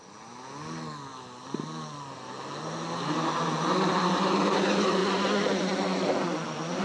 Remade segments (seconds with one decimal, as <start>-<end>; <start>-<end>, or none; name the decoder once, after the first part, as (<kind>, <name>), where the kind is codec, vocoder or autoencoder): none

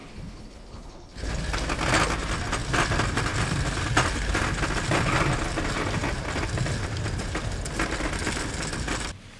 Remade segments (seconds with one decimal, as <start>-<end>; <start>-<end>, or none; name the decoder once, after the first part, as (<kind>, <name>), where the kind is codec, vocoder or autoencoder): 0.0-1.3 (codec, HILCodec)

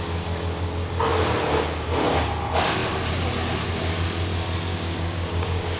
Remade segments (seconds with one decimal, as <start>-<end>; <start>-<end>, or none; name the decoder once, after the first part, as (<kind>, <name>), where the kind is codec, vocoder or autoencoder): 4.7-5.8 (codec, DAC)

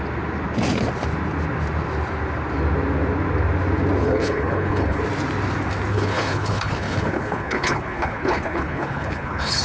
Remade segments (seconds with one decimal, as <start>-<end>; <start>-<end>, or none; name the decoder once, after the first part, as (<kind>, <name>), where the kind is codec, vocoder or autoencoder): 4.0-5.0 (codec, HILCodec); 5.9-9.6